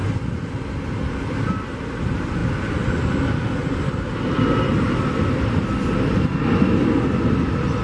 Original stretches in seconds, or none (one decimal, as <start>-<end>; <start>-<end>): 0.0-7.8